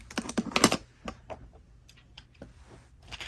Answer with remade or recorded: recorded